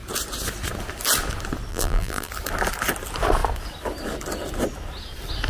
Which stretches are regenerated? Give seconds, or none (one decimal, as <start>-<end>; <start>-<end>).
1.7-2.3